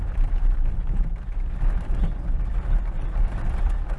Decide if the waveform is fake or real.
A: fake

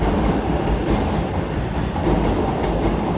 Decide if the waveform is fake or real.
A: real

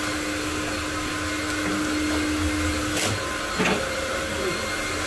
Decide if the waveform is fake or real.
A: real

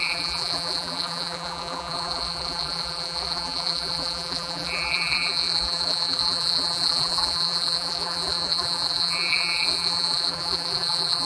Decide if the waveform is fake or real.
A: fake